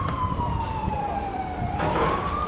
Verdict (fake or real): fake